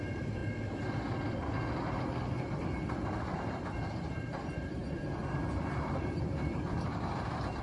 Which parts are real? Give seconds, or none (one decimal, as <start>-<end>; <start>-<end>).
0.4-3.3